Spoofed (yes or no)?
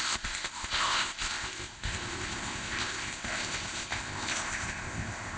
yes